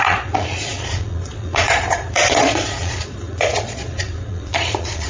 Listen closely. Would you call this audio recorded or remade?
remade